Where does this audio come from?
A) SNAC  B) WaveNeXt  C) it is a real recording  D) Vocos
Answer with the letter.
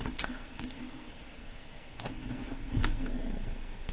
A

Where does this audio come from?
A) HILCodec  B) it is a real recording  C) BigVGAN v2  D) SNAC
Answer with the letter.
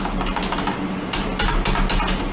B